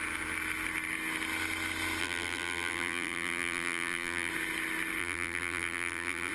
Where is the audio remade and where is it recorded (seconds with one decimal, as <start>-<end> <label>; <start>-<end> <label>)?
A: 0.0-2.0 recorded; 2.0-4.3 remade; 4.3-5.0 recorded; 5.0-6.3 remade